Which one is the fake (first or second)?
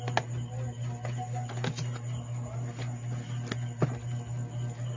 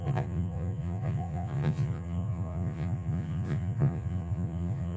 second